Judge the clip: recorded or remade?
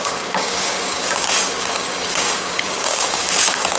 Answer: remade